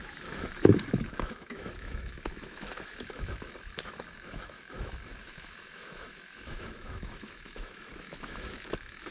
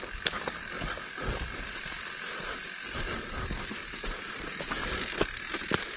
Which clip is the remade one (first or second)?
first